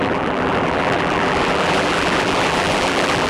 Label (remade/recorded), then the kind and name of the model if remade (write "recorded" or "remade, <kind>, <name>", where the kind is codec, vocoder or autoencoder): remade, vocoder, BigVGAN v2